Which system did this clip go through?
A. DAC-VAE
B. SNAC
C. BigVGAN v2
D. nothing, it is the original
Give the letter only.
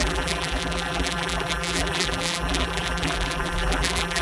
C